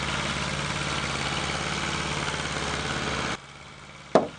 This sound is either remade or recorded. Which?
recorded